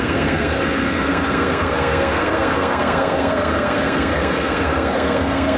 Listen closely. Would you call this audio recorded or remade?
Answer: remade